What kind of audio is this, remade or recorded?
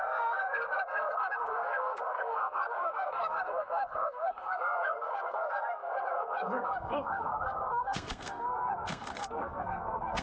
remade